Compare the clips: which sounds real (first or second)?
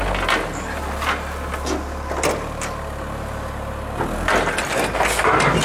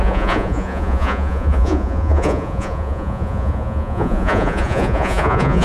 first